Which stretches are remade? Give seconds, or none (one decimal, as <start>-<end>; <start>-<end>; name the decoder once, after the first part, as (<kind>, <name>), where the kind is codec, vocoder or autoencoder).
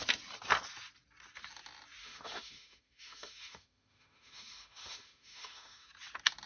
2.0-5.9 (autoencoder, DAC-VAE)